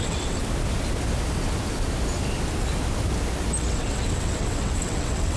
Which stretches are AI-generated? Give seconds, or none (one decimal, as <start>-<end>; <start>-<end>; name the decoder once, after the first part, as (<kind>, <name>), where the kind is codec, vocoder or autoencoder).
0.0-0.4 (vocoder, WaveNeXt); 3.6-5.4